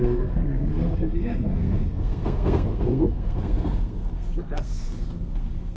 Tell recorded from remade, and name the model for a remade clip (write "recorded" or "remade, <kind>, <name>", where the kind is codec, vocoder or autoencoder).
remade, codec, SNAC